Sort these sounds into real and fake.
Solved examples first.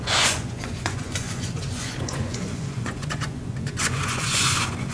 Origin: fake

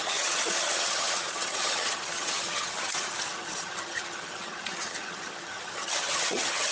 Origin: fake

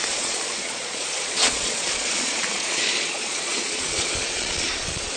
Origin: fake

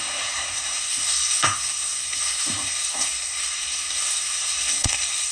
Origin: fake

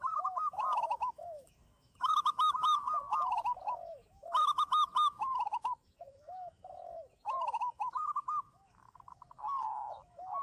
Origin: fake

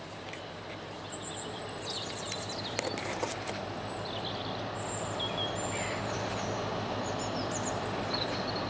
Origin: real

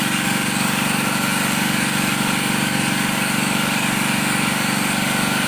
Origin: fake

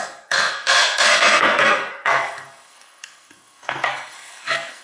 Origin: fake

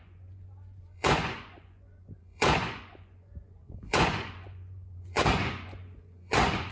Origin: fake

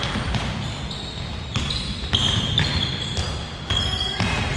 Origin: real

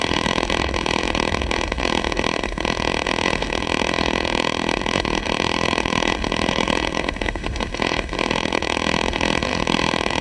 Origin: fake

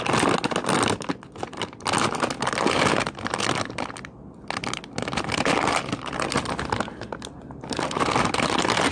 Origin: real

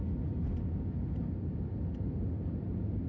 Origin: real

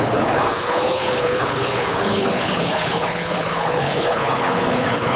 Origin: fake